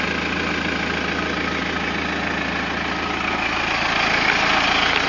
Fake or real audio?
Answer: real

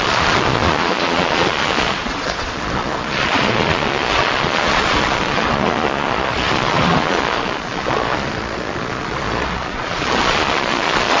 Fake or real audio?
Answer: fake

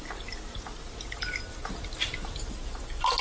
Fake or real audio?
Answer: real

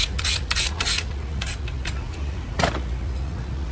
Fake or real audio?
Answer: fake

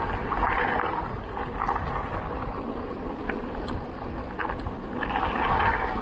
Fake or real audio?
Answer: real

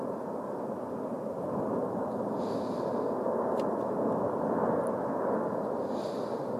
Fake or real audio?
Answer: real